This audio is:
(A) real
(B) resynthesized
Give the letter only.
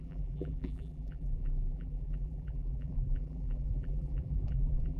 B